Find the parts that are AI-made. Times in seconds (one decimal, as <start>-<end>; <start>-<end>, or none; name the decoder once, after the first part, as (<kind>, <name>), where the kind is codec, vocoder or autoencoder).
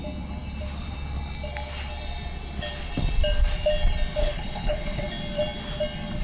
4.2-5.0 (codec, HILCodec)